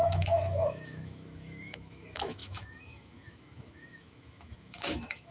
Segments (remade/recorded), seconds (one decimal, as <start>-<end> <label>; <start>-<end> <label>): 0.0-5.3 remade